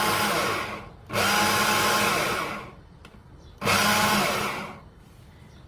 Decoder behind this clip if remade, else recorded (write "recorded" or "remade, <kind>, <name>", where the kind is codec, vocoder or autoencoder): recorded